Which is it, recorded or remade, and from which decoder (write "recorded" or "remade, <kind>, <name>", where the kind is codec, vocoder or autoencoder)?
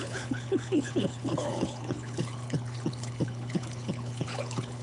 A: remade, codec, HILCodec